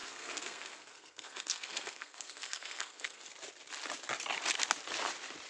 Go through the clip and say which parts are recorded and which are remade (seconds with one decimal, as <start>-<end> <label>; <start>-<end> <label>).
0.0-3.3 remade; 3.3-5.5 recorded